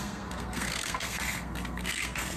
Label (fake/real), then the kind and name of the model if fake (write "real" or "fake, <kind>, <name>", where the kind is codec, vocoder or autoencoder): fake, codec, SNAC